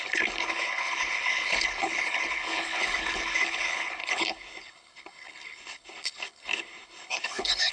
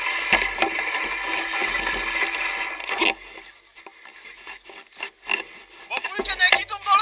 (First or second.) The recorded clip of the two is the second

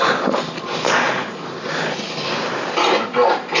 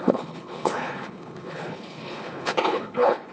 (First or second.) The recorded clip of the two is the first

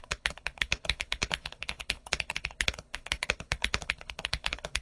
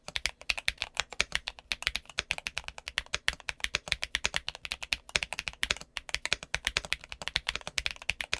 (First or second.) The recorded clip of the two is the second